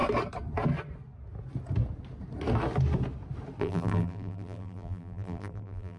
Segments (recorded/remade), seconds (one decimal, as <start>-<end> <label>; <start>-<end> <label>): 0.0-3.6 recorded; 3.6-6.0 remade